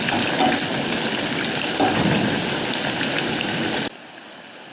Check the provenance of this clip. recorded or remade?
recorded